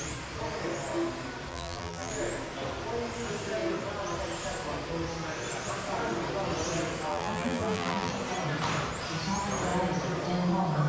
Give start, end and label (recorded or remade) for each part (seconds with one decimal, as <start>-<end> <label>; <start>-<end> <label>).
0.0-1.5 recorded; 1.5-2.1 remade; 2.1-7.1 recorded; 7.1-8.1 remade; 8.1-10.9 recorded